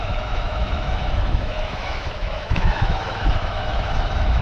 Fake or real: fake